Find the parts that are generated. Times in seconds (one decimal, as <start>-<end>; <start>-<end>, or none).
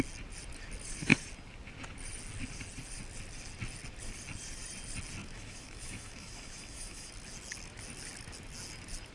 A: 5.2-7.1